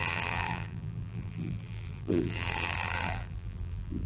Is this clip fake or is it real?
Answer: fake